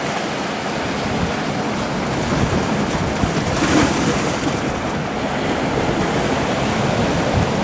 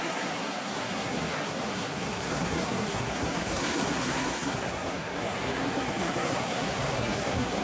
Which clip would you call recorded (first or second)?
first